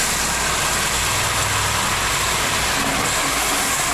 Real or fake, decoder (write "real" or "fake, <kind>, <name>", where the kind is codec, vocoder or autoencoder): real